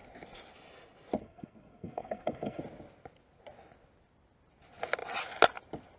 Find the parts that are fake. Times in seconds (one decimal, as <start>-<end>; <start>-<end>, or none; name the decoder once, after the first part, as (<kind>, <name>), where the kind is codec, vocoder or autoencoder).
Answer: 1.2-2.6 (codec, SNAC)